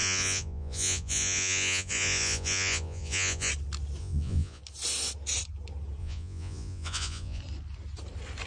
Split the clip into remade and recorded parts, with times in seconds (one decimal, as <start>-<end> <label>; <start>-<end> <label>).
0.0-3.5 remade; 3.5-4.0 recorded; 4.0-4.6 remade; 4.6-6.0 recorded; 6.0-7.4 remade; 7.4-8.5 recorded